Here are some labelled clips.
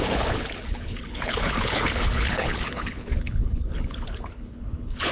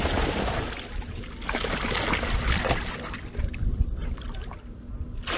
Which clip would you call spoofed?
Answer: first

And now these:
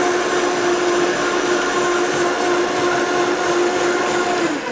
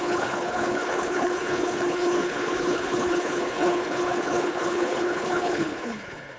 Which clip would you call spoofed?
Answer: second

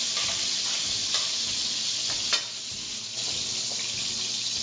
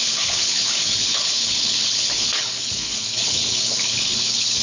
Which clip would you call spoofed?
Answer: second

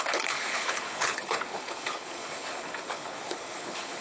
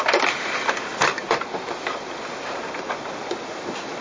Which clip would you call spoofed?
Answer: first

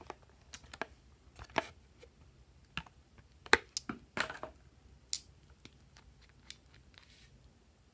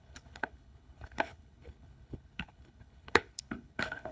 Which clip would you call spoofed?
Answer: second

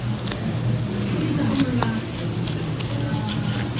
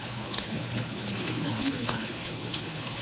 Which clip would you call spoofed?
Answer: second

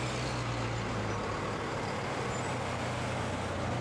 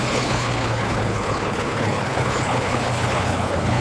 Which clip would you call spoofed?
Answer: second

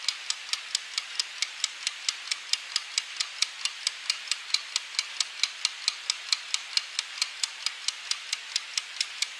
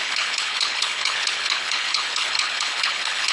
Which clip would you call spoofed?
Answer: second